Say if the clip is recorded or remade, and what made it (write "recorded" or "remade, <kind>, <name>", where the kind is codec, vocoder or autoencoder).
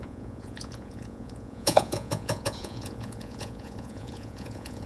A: remade, vocoder, Vocos